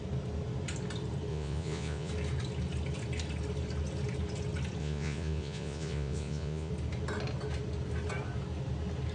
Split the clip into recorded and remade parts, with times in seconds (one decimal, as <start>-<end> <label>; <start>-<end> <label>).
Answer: 0.0-1.3 recorded; 1.3-2.1 remade; 2.1-4.8 recorded; 4.8-6.7 remade; 6.7-9.1 recorded